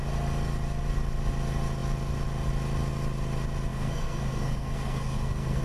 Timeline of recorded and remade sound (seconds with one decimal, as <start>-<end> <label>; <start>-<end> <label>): 0.0-3.7 recorded; 3.7-5.6 remade